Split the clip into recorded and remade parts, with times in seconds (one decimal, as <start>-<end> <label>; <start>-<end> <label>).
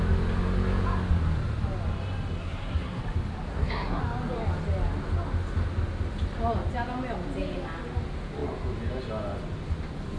0.0-2.4 recorded; 2.4-3.0 remade; 3.0-3.5 recorded; 3.5-4.0 remade; 4.0-10.2 recorded